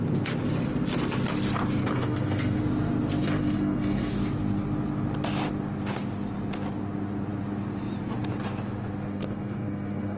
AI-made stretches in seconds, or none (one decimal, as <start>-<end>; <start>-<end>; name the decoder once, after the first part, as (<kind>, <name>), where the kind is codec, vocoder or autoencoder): 1.8-2.6 (codec, SNAC); 3.2-4.1; 9.1-10.2